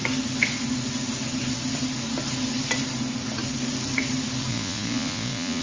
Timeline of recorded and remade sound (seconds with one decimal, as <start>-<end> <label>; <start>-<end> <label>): 0.0-4.5 recorded; 4.5-5.6 remade